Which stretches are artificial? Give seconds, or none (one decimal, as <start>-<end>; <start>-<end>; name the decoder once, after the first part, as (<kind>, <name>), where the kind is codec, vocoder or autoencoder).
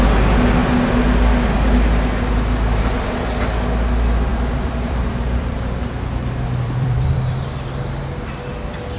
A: 4.3-7.3 (vocoder, BigVGAN v2)